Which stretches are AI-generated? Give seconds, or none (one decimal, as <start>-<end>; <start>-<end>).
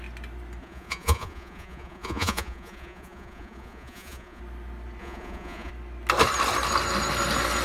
0.6-4.4; 5.0-5.7